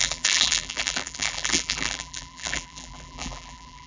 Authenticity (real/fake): fake